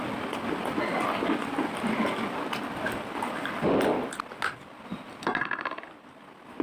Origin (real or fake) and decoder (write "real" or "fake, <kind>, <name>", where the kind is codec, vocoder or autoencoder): real